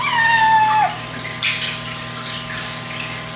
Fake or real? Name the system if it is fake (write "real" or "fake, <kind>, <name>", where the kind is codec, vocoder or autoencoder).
real